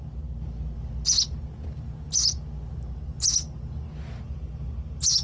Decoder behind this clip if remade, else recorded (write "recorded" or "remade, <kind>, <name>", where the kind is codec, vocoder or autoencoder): recorded